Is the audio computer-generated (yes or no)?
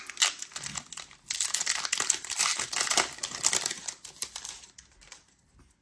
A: no